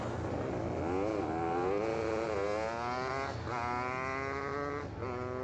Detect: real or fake real